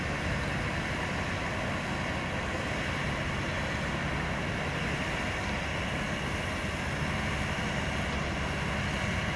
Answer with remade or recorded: recorded